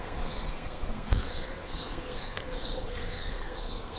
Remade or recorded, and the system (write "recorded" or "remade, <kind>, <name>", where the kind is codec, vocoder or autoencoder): remade, codec, SNAC